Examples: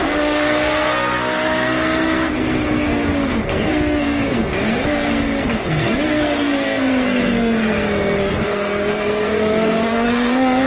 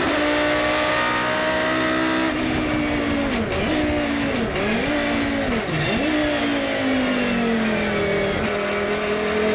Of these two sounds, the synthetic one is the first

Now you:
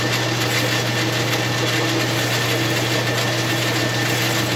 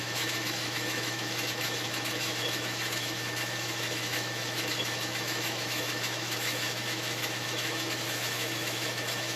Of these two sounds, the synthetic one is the second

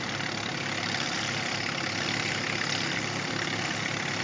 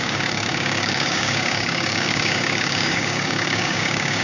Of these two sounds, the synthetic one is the second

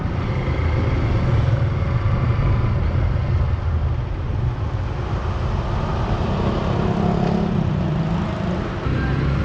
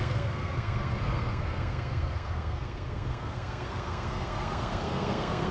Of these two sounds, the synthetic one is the second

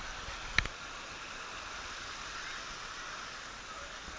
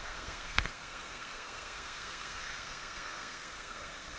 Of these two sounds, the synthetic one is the second